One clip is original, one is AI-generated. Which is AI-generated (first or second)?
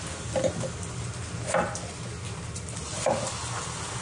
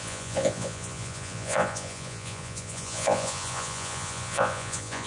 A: second